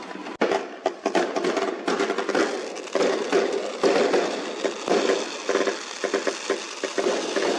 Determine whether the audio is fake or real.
real